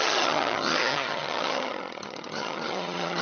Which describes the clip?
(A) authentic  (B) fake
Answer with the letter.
B